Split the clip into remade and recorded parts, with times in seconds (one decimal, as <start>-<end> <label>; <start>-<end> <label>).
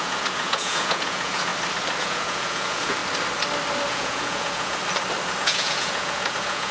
0.0-1.5 remade; 1.5-2.0 recorded; 2.0-3.0 remade; 3.0-3.9 recorded; 3.9-4.8 remade; 4.8-5.4 recorded; 5.4-6.7 remade